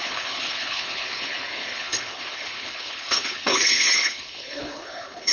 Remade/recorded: remade